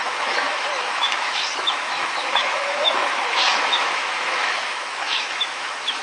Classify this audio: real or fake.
fake